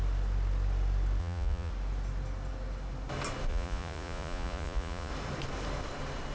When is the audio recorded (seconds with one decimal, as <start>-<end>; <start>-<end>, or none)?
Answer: 0.0-1.2; 1.7-3.5; 5.1-6.3